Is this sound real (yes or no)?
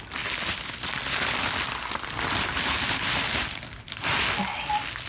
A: yes